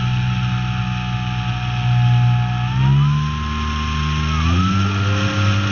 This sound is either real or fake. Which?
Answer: real